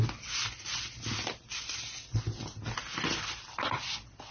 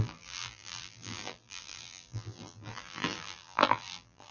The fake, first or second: second